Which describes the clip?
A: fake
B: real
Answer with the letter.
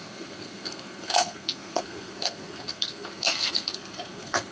A